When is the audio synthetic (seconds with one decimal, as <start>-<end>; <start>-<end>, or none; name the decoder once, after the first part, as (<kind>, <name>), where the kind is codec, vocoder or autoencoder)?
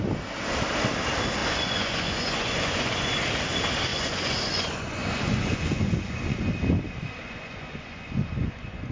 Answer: 1.4-3.2 (vocoder, Vocos); 3.9-6.5; 7.2-8.9